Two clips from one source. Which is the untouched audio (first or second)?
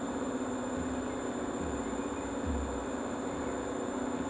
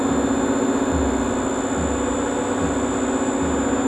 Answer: second